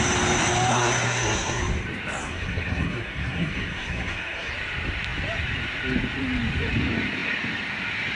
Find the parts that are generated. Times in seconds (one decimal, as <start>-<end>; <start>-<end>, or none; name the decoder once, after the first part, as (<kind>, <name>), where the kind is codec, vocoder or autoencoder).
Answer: 0.7-1.6 (codec, SNAC); 2.2-4.5